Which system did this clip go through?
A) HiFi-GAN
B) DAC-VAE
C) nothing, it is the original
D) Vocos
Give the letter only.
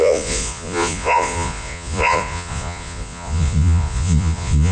D